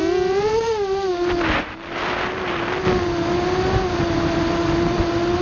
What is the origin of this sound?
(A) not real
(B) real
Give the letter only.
B